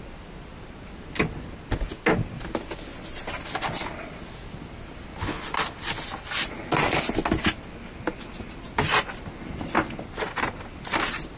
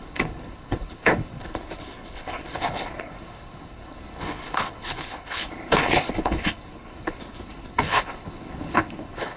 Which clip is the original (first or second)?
first